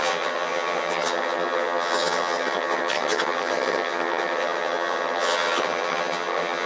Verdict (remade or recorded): remade